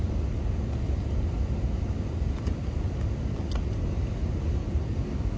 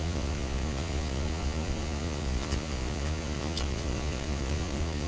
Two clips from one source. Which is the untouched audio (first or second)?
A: first